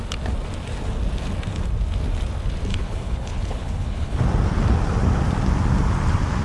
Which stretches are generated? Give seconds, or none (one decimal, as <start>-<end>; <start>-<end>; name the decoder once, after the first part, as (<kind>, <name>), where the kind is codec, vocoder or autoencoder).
2.7-4.2 (codec, HILCodec)